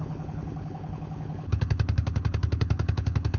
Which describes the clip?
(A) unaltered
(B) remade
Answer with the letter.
B